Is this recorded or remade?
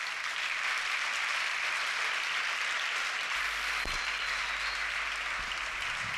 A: recorded